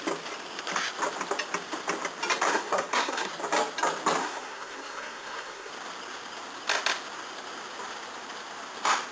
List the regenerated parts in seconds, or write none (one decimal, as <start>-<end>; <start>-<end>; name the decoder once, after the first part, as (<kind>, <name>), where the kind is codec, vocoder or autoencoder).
2.5-3.3 (codec, SNAC); 4.2-5.7